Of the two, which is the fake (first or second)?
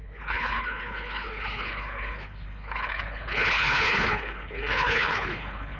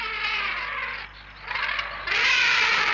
first